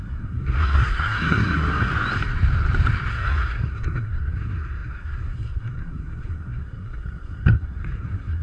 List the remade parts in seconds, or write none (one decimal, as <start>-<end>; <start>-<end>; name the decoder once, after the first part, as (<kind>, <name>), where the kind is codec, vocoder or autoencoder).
0.0-1.9 (codec, SNAC); 3.1-8.4